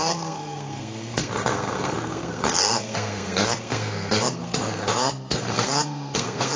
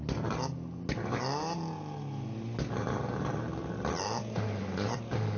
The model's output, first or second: first